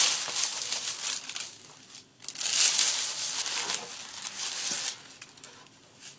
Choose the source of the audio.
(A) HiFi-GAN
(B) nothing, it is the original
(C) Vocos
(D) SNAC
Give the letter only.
B